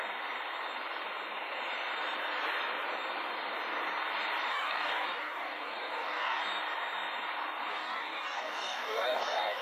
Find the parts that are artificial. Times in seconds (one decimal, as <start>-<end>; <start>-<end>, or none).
4.5-6.4; 7.7-9.6